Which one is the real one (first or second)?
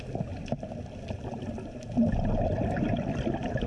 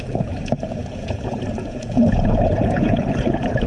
first